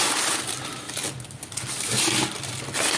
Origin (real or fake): real